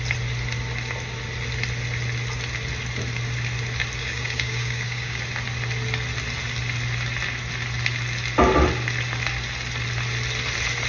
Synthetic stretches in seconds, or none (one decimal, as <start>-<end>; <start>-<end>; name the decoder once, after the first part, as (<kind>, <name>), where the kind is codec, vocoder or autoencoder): 4.0-5.2 (codec, DAC)